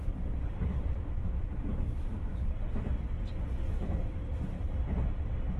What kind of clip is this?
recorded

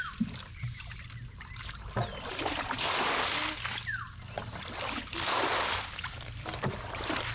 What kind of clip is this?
recorded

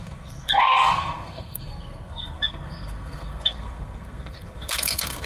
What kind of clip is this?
remade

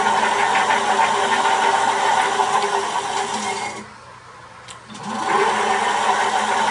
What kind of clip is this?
recorded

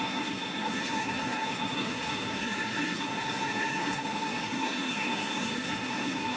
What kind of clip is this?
remade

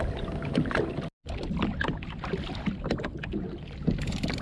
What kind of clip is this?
recorded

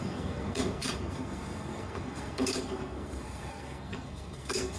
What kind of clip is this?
remade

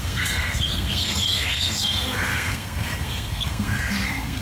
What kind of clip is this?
remade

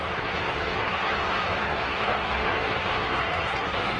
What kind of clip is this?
remade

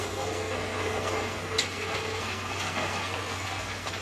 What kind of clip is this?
remade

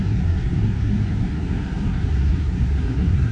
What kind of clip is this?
remade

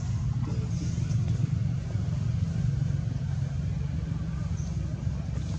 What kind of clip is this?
recorded